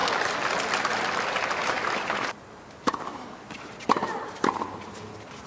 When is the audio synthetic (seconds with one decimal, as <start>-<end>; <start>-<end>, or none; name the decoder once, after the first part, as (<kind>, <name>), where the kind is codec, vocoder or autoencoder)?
1.6-4.9 (vocoder, BigVGAN v2)